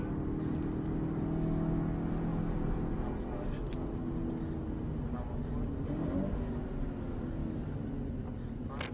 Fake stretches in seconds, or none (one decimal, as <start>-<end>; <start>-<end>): none